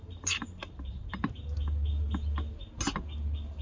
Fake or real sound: real